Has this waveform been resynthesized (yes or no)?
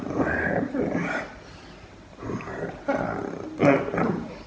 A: no